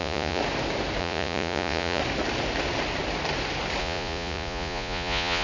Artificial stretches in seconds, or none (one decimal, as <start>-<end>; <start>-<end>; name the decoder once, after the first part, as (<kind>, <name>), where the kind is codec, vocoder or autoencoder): 0.0-0.4 (vocoder, Vocos); 1.0-2.0; 3.8-5.4